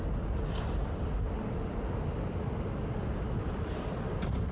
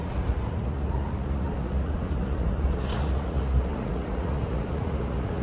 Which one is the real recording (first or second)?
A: first